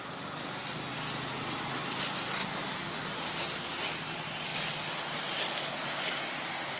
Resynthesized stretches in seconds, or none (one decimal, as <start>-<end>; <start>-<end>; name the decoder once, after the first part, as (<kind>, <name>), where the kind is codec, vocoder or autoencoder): none